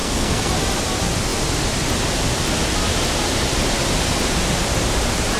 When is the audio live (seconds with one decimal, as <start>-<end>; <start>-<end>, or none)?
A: 0.5-5.4